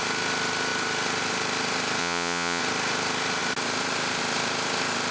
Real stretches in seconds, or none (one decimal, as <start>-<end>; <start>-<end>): 0.0-2.0; 2.6-5.1